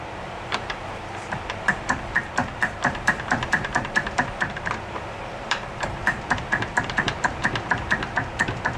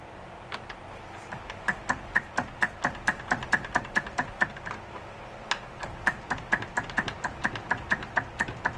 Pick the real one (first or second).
second